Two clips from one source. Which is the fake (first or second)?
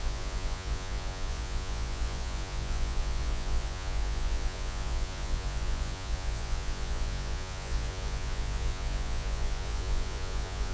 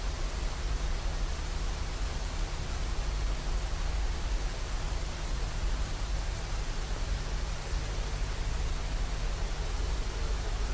first